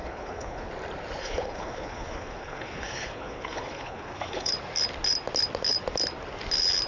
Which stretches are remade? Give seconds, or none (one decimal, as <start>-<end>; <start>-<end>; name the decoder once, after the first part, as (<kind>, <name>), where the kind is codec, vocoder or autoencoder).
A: 0.0-0.7 (codec, HILCodec); 1.2-4.5